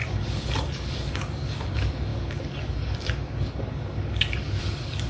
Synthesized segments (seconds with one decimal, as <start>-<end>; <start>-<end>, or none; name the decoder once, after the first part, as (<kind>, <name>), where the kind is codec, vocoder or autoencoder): 0.0-5.1 (codec, DAC)